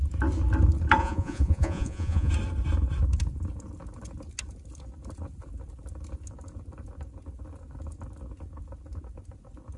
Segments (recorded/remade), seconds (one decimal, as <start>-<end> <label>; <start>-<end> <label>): 0.0-1.0 recorded; 1.0-2.3 remade; 2.3-9.8 recorded